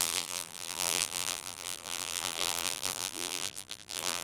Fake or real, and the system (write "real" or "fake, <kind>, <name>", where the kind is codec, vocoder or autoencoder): fake, vocoder, BigVGAN v2